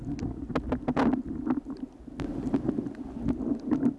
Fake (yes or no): no